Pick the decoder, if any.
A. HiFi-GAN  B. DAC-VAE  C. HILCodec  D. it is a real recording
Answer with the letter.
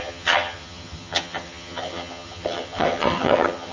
A